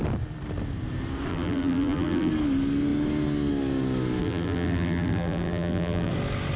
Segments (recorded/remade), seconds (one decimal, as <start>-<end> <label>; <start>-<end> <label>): 0.0-1.3 recorded; 1.3-2.3 remade; 2.3-4.2 recorded; 4.2-6.1 remade; 6.1-6.6 recorded